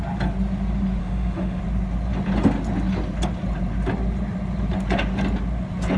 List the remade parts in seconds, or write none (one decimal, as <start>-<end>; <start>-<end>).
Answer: 1.0-1.6